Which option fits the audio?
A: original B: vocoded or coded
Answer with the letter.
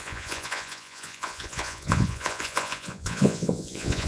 B